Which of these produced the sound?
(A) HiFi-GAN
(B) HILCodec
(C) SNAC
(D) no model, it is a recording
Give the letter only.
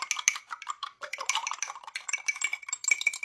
D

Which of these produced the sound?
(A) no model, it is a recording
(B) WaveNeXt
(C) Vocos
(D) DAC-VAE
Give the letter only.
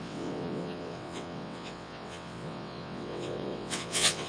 B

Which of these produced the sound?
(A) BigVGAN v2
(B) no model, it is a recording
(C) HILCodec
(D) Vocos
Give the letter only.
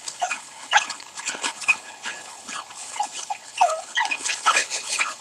C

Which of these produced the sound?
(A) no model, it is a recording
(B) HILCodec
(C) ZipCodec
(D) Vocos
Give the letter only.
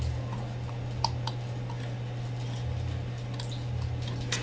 A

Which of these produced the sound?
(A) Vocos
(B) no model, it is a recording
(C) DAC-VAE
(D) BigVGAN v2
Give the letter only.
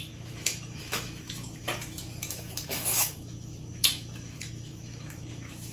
C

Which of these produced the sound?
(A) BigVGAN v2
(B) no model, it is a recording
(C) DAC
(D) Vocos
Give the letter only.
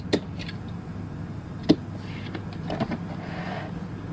B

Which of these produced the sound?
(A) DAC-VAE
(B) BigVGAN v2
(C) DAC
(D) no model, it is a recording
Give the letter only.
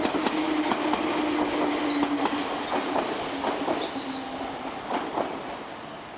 D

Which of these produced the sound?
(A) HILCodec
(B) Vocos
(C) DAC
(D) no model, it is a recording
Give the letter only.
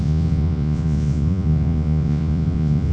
B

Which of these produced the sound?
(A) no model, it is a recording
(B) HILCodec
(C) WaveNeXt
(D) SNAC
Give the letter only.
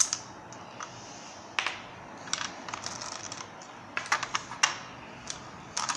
A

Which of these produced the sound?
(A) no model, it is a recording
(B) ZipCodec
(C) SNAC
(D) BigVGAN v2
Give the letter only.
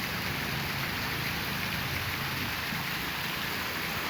A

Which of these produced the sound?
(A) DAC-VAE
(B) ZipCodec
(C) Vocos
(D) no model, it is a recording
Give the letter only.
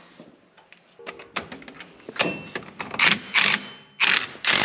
D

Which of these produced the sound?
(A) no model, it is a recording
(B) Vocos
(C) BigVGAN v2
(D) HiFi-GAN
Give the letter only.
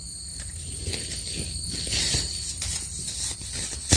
A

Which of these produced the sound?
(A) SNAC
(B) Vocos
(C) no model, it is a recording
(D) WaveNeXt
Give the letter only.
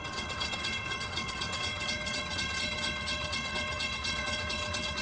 D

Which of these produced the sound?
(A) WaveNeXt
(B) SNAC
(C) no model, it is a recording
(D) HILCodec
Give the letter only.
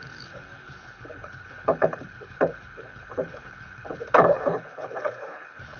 D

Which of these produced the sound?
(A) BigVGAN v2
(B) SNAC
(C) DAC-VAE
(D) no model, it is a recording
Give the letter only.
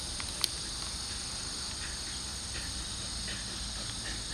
D